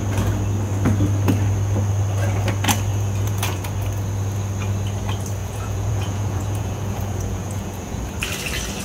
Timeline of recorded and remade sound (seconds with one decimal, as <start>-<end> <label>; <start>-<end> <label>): 0.0-2.9 recorded; 2.9-3.7 remade; 3.7-5.4 recorded; 5.4-8.0 remade; 8.0-8.8 recorded